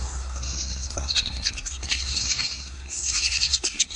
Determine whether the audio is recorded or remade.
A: remade